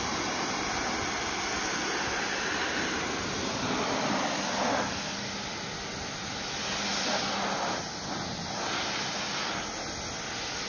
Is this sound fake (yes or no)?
no